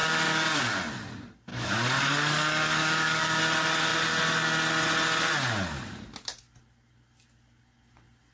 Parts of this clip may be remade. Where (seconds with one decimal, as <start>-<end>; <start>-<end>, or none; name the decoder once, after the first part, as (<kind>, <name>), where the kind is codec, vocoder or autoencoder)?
0.0-0.6 (codec, DAC); 1.5-3.4